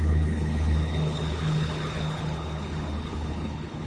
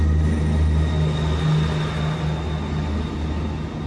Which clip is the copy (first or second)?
first